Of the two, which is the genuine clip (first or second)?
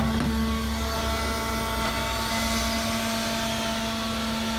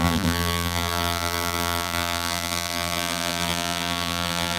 first